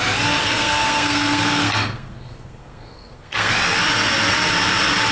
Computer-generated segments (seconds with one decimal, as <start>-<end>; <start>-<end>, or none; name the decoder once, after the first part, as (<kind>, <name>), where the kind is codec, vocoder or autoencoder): 0.4-3.5 (codec, SNAC)